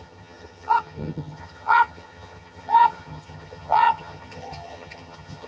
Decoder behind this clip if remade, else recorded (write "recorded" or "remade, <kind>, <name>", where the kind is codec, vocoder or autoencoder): remade, vocoder, HiFi-GAN